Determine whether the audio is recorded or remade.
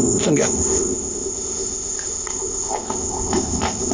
remade